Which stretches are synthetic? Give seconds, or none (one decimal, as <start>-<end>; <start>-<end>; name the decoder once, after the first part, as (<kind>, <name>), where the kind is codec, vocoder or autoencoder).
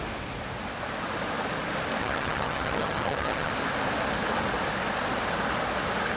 2.0-3.5 (vocoder, HiFi-GAN)